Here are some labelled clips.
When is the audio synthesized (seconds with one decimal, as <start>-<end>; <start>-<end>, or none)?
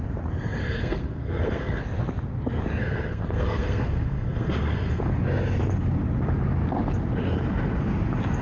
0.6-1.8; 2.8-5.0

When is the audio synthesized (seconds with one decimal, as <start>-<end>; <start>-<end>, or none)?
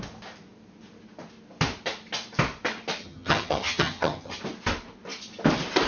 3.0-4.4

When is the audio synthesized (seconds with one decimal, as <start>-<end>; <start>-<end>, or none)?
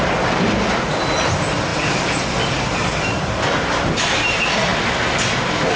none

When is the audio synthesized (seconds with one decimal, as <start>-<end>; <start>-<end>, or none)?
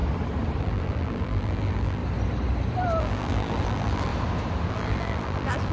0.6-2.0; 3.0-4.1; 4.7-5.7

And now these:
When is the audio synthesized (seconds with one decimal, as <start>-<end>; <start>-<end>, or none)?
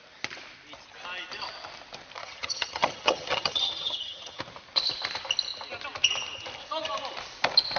2.2-4.4